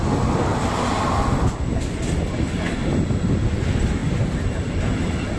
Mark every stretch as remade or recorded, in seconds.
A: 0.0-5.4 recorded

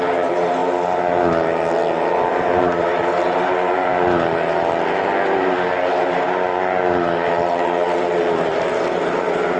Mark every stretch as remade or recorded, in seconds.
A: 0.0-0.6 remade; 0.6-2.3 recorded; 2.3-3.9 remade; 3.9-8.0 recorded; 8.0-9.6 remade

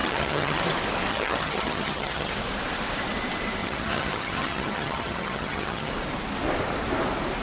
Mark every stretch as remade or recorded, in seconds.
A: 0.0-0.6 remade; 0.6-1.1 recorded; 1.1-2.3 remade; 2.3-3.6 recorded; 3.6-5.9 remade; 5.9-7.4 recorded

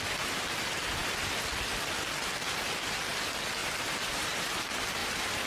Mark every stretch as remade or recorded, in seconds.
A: 0.0-5.0 recorded; 5.0-5.5 remade